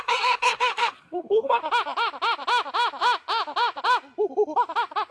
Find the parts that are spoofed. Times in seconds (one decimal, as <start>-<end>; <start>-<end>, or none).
0.0-1.6